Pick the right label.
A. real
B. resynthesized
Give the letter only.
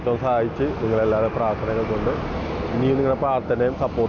A